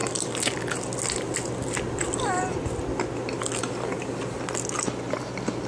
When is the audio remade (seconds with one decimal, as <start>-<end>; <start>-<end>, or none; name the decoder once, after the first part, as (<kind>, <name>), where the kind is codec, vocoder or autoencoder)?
none